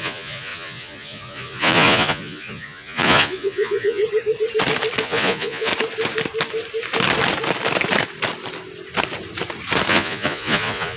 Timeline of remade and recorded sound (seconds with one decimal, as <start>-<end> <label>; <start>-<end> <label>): 0.0-4.0 remade; 4.0-5.0 recorded; 5.0-5.7 remade; 5.7-9.9 recorded; 9.9-11.0 remade